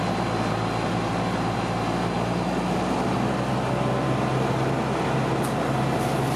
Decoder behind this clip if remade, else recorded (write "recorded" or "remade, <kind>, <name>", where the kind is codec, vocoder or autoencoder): recorded